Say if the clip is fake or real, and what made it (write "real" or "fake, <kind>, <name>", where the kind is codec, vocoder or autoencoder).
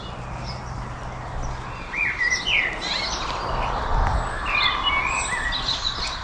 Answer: real